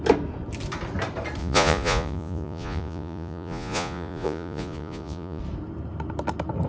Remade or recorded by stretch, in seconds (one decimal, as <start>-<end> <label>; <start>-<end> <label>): 0.0-1.4 recorded; 1.4-5.4 remade; 5.4-6.7 recorded